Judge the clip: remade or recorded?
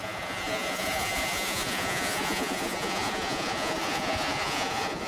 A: remade